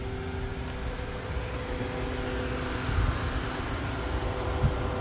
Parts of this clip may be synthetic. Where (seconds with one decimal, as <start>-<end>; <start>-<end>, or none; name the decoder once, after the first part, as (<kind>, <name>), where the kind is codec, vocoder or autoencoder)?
none